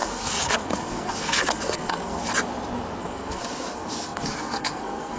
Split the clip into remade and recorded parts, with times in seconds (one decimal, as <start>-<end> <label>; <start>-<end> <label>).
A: 0.0-2.2 remade; 2.2-3.0 recorded; 3.0-5.2 remade

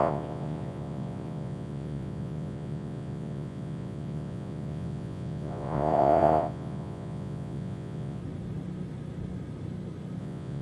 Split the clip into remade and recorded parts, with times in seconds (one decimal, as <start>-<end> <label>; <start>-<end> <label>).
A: 0.0-8.2 remade; 8.2-10.2 recorded; 10.2-10.6 remade

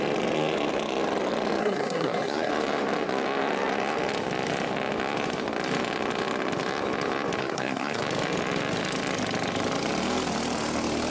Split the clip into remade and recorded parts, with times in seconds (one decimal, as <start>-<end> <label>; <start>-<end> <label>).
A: 0.0-1.6 recorded; 1.6-2.5 remade; 2.5-7.4 recorded; 7.4-8.0 remade; 8.0-11.1 recorded

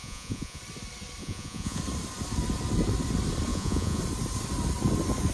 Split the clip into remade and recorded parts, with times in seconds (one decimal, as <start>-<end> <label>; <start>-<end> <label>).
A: 0.0-0.6 remade; 0.6-1.2 recorded; 1.2-1.8 remade; 1.8-3.5 recorded; 3.5-4.0 remade; 4.0-5.3 recorded

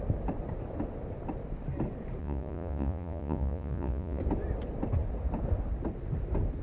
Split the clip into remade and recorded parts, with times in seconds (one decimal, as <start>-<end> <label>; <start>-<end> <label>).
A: 0.0-2.2 recorded; 2.2-4.2 remade; 4.2-6.6 recorded

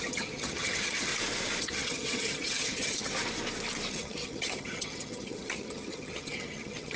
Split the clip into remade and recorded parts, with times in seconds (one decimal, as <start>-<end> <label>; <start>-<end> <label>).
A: 0.0-1.1 remade; 1.1-1.6 recorded; 1.6-3.1 remade; 3.1-3.9 recorded; 3.9-7.0 remade

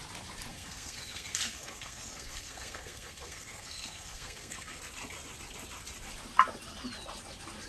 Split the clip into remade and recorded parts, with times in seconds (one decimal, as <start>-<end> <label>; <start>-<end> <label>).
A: 0.0-0.5 recorded; 0.5-4.8 remade; 4.8-7.7 recorded

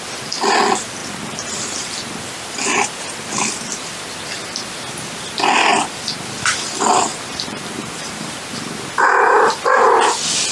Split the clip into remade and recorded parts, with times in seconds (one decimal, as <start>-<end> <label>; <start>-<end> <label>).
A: 0.0-1.0 recorded; 1.0-2.2 remade; 2.2-7.1 recorded; 7.1-8.4 remade; 8.4-10.5 recorded